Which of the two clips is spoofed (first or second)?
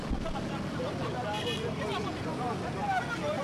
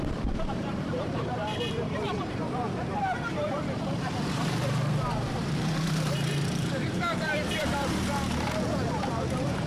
second